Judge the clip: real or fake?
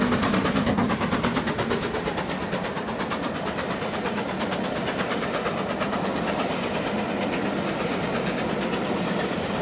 real